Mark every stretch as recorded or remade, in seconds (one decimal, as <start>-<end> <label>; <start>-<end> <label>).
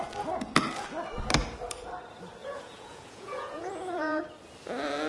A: 0.0-2.4 recorded; 2.4-4.2 remade; 4.2-5.1 recorded